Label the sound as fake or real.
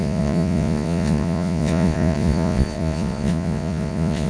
fake